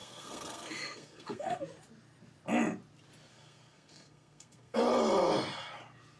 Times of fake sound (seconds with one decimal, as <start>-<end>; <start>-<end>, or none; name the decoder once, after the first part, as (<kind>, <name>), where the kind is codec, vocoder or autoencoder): 0.0-1.6 (codec, SNAC); 3.3-4.8